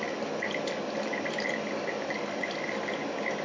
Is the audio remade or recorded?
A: recorded